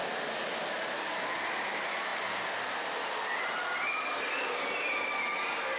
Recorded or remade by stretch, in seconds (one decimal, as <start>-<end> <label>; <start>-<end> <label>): 0.0-5.8 recorded